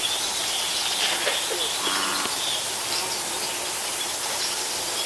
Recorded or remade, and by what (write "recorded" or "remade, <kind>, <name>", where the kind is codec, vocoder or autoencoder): recorded